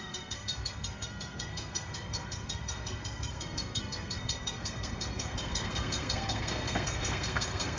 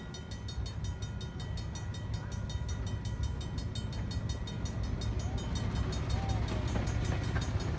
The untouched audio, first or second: second